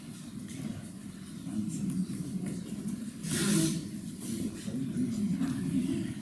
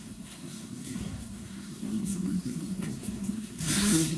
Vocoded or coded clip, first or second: second